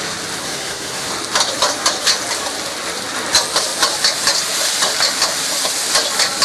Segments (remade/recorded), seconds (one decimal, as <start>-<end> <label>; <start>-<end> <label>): 0.0-0.4 recorded; 0.4-1.1 remade; 1.1-6.4 recorded